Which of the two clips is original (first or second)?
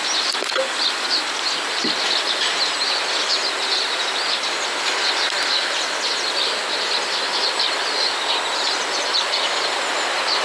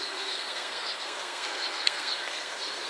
first